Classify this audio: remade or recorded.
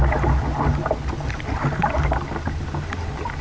recorded